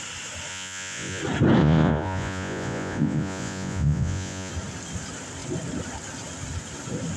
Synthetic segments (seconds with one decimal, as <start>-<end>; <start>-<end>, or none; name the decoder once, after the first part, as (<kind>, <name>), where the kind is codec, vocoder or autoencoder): 0.5-1.2 (vocoder, Vocos); 1.6-4.5